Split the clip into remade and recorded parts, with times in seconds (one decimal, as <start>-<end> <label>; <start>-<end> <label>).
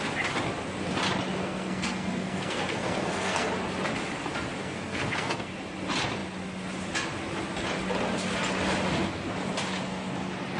0.0-1.4 recorded; 1.4-3.5 remade; 3.5-4.6 recorded; 4.6-5.5 remade; 5.5-10.6 recorded